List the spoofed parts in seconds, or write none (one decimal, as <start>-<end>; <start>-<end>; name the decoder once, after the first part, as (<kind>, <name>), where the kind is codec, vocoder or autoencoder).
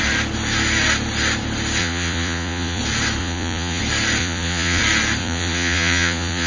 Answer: 1.8-2.8 (vocoder, Vocos); 3.2-3.8; 4.2-4.8; 5.2-6.5